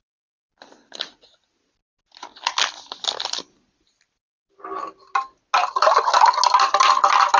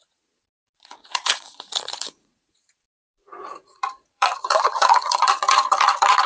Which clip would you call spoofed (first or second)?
second